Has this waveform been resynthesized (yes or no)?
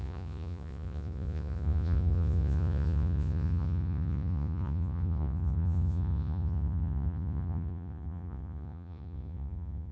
yes